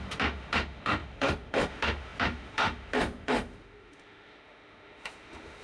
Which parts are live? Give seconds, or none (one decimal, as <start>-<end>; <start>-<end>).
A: none